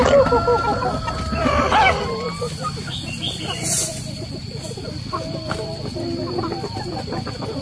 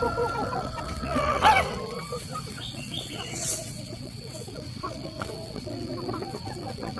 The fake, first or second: second